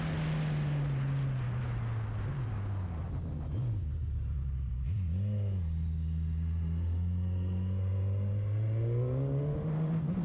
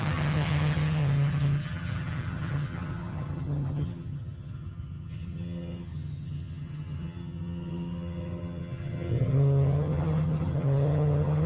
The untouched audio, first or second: first